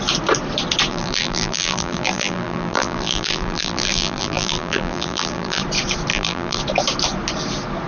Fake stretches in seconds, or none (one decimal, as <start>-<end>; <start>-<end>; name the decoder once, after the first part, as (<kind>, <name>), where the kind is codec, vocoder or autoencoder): 0.9-5.6 (vocoder, BigVGAN v2); 6.1-6.6